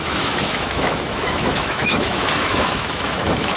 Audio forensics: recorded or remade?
remade